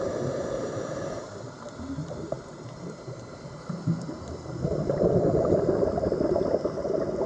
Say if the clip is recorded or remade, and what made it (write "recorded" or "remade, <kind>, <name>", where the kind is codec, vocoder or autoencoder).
remade, vocoder, BigVGAN v2